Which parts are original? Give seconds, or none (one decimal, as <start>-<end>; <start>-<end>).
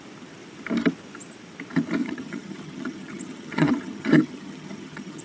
0.0-2.0